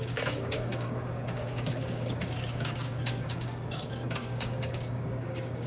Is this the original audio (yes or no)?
no